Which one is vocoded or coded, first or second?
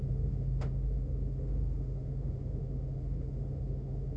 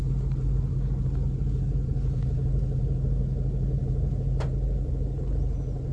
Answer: first